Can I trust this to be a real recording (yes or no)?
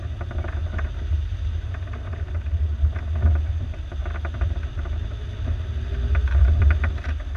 yes